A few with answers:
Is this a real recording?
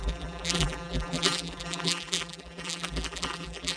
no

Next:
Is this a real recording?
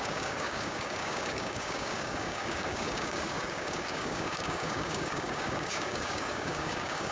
no